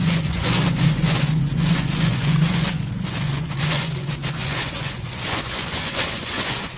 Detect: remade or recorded remade